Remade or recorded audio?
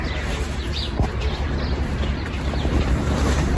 recorded